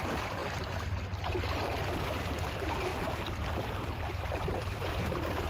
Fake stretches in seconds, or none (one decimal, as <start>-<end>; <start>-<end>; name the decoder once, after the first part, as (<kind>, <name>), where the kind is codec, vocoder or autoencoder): 0.0-0.4 (vocoder, BigVGAN v2); 1.9-2.9; 3.4-5.5